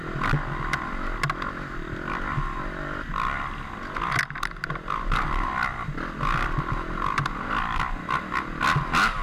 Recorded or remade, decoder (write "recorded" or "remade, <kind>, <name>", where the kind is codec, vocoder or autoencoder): recorded